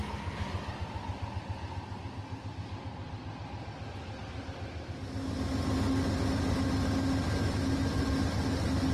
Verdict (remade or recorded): recorded